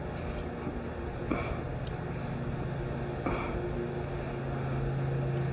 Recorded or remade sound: recorded